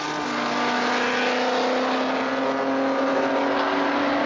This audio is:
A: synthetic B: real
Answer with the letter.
B